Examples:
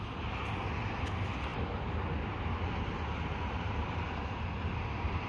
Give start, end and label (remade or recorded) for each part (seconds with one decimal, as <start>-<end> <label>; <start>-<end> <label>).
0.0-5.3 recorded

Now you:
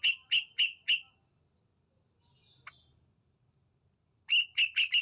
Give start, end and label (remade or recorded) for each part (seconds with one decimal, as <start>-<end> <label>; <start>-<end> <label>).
0.0-5.0 recorded

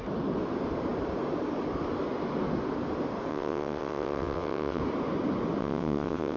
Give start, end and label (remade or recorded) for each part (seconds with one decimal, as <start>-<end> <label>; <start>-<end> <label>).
0.0-3.3 recorded; 3.3-4.8 remade; 4.8-5.6 recorded; 5.6-6.4 remade

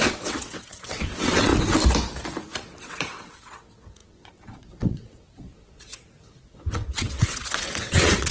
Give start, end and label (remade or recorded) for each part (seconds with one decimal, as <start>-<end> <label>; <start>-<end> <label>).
0.0-1.5 remade; 1.5-2.8 recorded; 2.8-8.3 remade

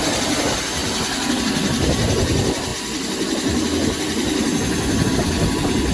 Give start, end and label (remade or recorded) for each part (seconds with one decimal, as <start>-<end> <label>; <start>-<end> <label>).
0.0-5.9 recorded

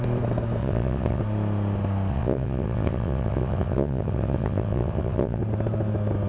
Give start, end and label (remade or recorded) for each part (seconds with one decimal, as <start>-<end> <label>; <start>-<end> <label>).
0.0-0.6 recorded; 0.6-1.2 remade; 1.2-2.1 recorded; 2.1-5.4 remade; 5.4-6.3 recorded